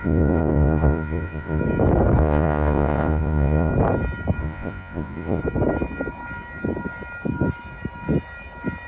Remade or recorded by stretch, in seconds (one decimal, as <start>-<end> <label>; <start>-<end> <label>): 0.0-1.6 remade; 1.6-2.2 recorded; 2.2-3.7 remade; 3.7-4.4 recorded; 4.4-5.4 remade; 5.4-8.9 recorded